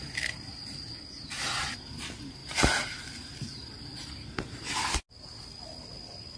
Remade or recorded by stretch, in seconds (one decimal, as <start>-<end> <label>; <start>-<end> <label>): 0.0-2.4 recorded; 2.4-4.7 remade; 4.7-6.4 recorded